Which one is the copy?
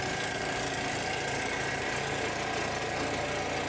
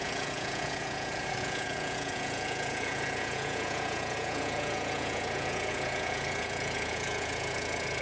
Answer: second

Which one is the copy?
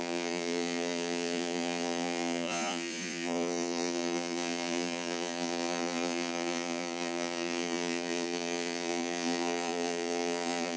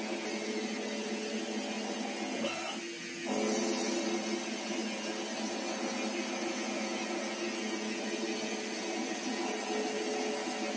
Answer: first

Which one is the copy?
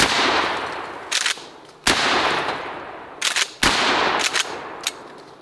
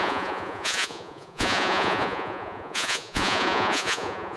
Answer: second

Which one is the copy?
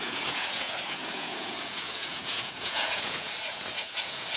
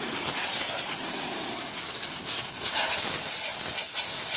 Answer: first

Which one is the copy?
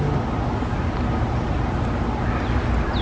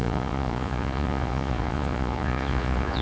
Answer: second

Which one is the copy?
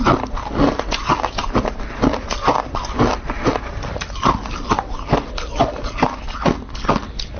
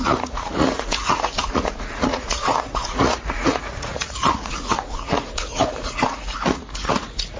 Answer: second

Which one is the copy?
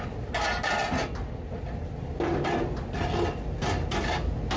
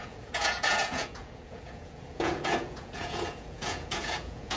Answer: second